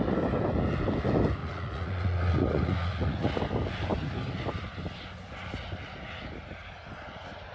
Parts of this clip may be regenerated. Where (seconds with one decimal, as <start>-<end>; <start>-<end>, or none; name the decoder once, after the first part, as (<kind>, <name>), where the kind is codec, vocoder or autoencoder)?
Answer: 1.4-3.4 (vocoder, Vocos)

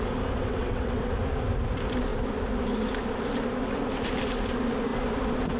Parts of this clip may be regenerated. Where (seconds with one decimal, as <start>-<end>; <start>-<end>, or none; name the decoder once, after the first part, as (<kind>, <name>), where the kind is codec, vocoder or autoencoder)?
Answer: 0.4-1.1 (vocoder, WaveNeXt)

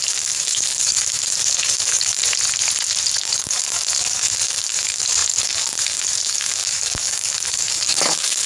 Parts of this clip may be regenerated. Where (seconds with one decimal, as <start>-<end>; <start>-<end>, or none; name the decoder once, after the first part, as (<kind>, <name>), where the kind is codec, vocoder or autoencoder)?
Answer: 0.0-2.2 (codec, DAC); 3.2-8.5

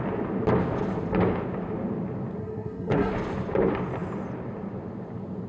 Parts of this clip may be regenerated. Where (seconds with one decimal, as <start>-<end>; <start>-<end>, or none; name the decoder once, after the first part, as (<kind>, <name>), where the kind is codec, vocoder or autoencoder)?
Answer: 2.4-3.1 (codec, SNAC)